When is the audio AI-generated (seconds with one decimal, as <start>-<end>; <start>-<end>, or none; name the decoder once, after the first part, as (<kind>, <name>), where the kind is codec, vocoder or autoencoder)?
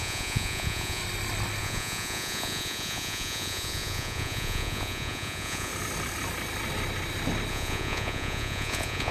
0.0-1.0 (vocoder, Vocos); 1.6-5.7; 7.5-9.1